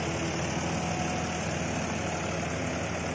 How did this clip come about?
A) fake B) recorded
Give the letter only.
B